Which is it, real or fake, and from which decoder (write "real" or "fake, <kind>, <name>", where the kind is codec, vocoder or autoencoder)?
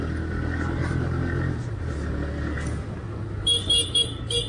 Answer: real